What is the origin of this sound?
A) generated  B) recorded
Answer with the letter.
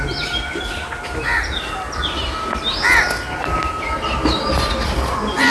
B